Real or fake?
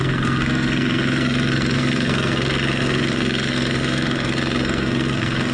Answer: fake